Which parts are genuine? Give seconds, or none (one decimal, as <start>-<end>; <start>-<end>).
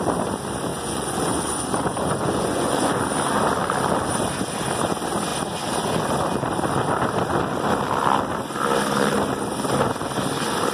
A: 0.0-0.7; 3.0-10.7